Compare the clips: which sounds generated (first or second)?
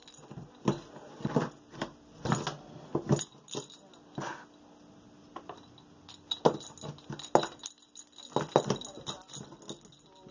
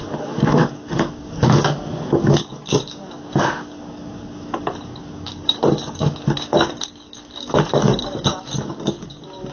second